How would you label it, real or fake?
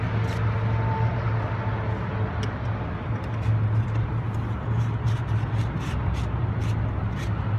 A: real